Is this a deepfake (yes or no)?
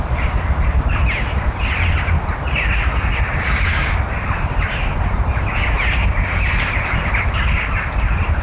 no